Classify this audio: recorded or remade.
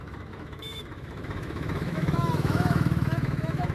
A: remade